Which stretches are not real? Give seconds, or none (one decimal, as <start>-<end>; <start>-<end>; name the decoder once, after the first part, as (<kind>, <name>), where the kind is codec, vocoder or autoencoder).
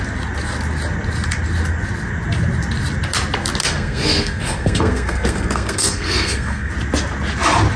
3.6-6.7 (codec, SNAC)